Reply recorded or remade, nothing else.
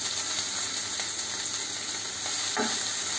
recorded